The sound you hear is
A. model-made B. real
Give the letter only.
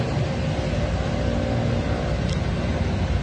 B